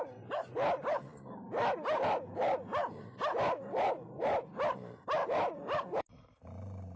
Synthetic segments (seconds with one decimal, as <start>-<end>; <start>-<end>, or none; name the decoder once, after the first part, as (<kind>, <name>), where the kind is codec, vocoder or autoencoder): none